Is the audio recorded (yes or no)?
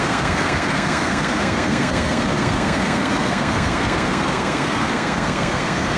no